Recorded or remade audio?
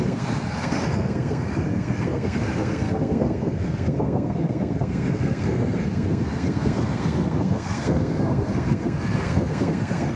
remade